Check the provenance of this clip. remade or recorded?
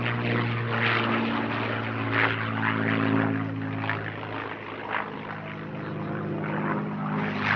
recorded